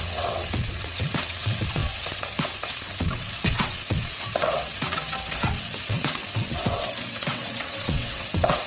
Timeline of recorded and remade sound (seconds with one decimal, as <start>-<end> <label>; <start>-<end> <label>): 0.0-8.7 remade